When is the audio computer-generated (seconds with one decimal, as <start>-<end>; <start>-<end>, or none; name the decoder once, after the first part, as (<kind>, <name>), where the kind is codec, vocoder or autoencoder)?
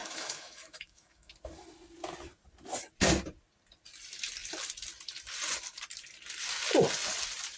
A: 0.0-1.3 (autoencoder, DAC-VAE)